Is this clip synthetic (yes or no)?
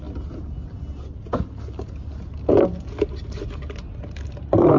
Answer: no